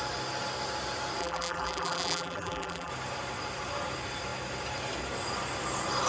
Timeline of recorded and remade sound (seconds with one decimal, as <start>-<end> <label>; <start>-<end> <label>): 0.0-1.2 recorded; 1.2-2.9 remade; 2.9-6.1 recorded